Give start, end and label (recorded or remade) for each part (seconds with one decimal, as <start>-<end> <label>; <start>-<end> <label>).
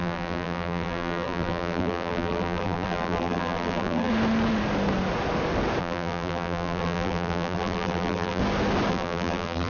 0.0-4.1 remade; 4.1-5.8 recorded; 5.8-8.4 remade; 8.4-8.9 recorded; 8.9-9.7 remade